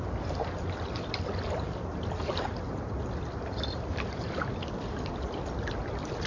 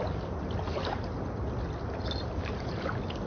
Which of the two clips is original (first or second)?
second